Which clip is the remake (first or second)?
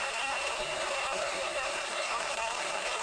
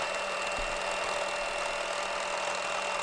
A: first